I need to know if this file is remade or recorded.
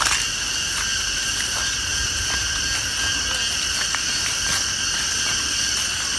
recorded